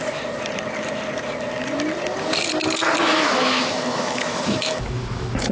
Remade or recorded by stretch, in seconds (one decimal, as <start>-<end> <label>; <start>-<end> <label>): 0.0-3.0 recorded; 3.0-5.5 remade